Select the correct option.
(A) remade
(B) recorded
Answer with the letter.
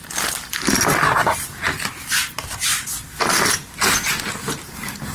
B